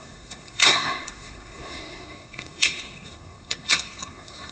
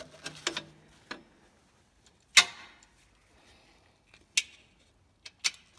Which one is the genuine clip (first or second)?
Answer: second